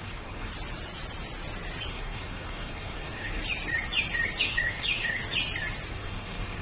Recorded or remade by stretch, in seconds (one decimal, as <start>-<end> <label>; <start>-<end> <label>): 0.0-0.5 remade; 0.5-1.9 recorded; 1.9-3.4 remade; 3.4-4.4 recorded; 4.4-5.2 remade; 5.2-5.9 recorded; 5.9-6.6 remade